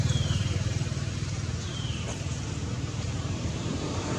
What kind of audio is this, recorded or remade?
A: remade